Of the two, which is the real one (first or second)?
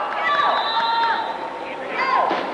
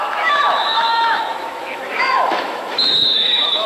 first